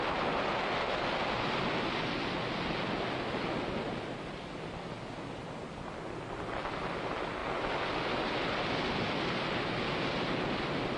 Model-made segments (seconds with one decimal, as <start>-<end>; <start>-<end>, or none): none